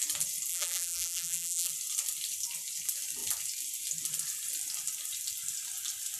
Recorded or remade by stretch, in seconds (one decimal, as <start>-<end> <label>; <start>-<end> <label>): 0.0-0.5 recorded; 0.5-1.7 remade; 1.7-6.2 recorded